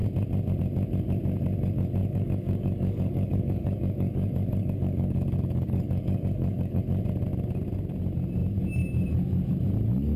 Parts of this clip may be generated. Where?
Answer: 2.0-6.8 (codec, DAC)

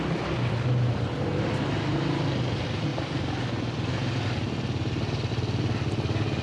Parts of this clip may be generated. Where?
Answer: none

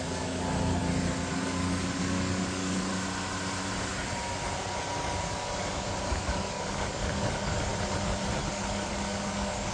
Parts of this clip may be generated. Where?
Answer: 0.0-0.8 (codec, DAC); 1.3-2.9; 5.0-7.7; 8.5-9.7

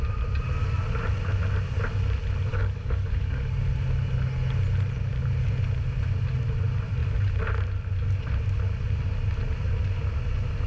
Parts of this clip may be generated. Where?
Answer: 2.5-3.5 (codec, DAC)

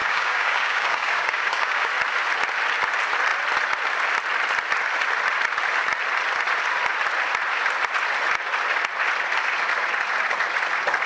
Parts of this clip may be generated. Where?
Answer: 0.0-1.9 (codec, DAC)